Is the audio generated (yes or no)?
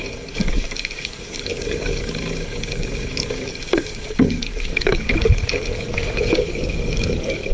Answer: yes